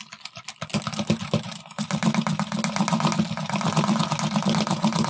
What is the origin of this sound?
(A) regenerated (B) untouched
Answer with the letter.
B